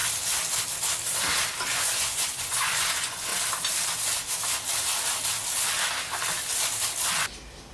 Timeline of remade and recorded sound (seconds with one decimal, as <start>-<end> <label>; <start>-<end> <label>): 0.0-1.7 recorded; 1.7-3.3 remade; 3.3-7.7 recorded